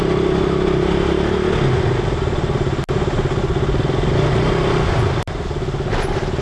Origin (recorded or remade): recorded